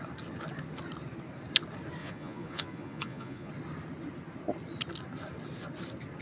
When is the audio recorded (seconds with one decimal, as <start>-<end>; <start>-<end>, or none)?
0.0-2.0; 3.5-6.2